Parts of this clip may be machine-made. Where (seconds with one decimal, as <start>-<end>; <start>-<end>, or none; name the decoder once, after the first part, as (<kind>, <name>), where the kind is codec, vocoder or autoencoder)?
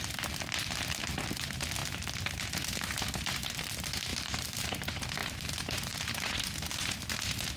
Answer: 4.1-4.6 (vocoder, BigVGAN v2); 5.2-7.1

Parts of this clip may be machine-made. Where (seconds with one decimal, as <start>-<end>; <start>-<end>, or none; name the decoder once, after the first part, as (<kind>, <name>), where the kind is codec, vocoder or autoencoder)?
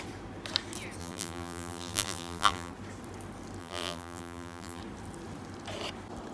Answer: 1.0-2.7 (vocoder, BigVGAN v2); 3.6-4.8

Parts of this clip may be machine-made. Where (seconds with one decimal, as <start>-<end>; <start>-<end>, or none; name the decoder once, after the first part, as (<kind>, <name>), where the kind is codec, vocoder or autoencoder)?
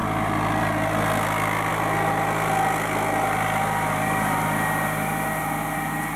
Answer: none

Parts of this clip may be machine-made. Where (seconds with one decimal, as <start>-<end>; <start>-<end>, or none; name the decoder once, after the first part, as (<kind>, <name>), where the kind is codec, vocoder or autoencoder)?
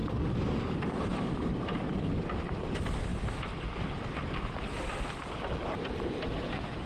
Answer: 0.0-1.0 (codec, DAC)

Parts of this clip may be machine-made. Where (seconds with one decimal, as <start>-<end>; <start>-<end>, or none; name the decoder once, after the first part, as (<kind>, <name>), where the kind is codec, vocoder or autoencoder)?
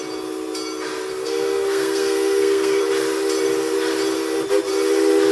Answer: 1.1-2.8 (codec, SNAC)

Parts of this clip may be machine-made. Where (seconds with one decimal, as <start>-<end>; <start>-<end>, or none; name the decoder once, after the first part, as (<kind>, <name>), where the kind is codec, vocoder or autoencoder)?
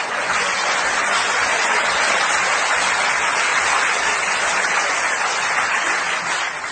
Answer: 0.0-2.1 (vocoder, Vocos); 3.5-6.2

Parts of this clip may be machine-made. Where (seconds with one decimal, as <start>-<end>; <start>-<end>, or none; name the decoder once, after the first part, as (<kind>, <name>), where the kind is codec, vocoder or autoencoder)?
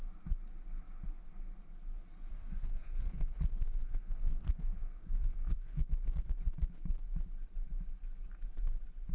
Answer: 2.3-3.4 (codec, SNAC); 3.8-5.9